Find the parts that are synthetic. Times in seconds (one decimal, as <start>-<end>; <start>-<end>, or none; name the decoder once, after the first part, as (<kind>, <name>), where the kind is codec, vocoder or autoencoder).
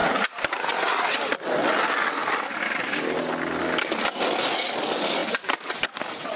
none